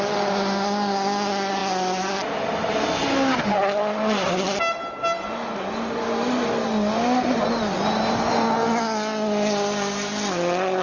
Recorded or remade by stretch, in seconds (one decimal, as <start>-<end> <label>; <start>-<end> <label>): 0.0-10.8 recorded

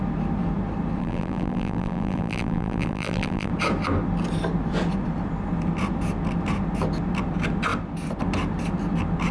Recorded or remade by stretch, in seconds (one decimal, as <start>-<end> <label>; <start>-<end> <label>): 0.0-1.0 recorded; 1.0-3.5 remade; 3.5-9.3 recorded